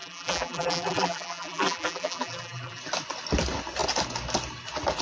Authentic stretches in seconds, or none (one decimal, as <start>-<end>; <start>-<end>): 2.8-5.0